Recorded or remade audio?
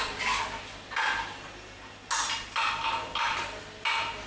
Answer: recorded